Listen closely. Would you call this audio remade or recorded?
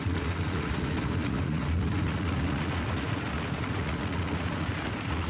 remade